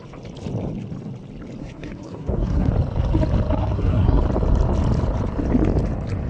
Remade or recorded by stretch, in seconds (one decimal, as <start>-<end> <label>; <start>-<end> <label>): 0.0-1.6 recorded; 1.6-2.7 remade; 2.7-3.6 recorded; 3.6-4.2 remade; 4.2-6.3 recorded